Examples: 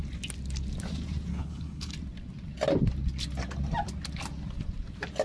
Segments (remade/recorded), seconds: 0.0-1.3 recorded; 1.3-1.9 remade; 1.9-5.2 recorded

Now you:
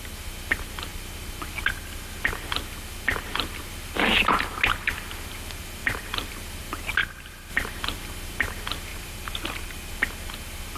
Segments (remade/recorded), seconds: 0.0-5.8 recorded; 5.8-6.3 remade; 6.3-7.0 recorded; 7.0-7.5 remade; 7.5-8.9 recorded; 8.9-9.9 remade; 9.9-10.8 recorded

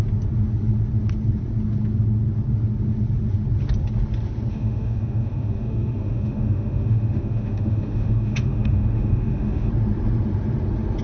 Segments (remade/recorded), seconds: 0.0-4.5 recorded; 4.5-9.7 remade; 9.7-11.0 recorded